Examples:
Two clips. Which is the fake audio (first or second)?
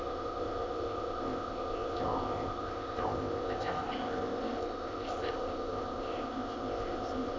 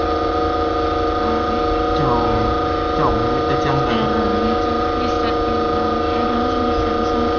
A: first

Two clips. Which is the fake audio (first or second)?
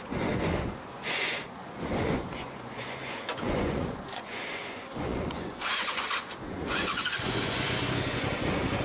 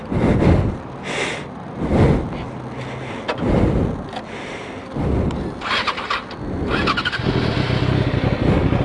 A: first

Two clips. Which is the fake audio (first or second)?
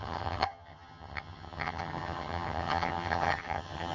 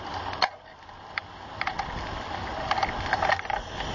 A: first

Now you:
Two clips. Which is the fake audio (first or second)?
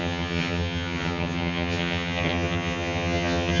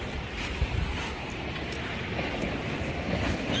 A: first